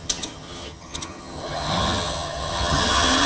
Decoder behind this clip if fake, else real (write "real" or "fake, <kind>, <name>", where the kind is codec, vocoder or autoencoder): fake, vocoder, HiFi-GAN